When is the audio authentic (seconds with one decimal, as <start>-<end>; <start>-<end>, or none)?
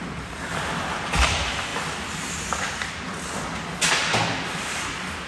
0.0-5.3